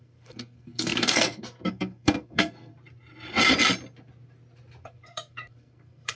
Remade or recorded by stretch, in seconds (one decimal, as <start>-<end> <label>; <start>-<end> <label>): 0.0-2.7 remade; 2.7-4.8 recorded; 4.8-6.2 remade